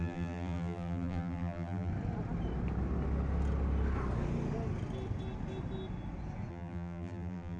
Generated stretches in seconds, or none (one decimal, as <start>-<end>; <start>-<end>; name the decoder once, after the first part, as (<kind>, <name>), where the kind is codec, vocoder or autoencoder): 0.0-1.9 (vocoder, BigVGAN v2); 6.5-7.6